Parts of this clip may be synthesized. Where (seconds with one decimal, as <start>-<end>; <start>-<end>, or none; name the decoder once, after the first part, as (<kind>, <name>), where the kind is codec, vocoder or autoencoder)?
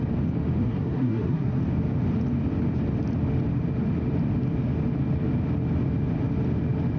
0.6-1.6 (codec, SNAC)